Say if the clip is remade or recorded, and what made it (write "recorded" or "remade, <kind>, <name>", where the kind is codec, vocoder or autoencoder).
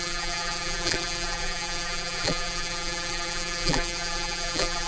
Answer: remade, vocoder, BigVGAN v2